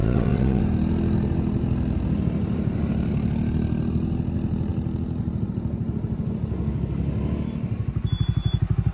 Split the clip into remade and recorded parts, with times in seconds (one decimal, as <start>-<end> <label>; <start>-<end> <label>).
0.0-0.6 remade; 0.6-8.9 recorded